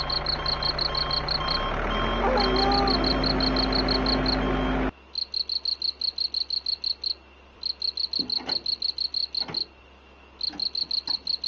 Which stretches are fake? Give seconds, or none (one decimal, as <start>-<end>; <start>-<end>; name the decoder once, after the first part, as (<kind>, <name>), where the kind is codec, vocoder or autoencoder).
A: none